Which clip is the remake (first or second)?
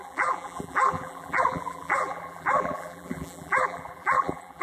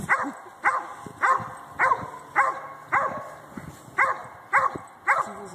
first